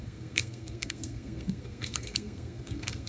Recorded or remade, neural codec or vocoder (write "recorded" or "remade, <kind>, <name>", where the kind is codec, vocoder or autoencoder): remade, codec, SNAC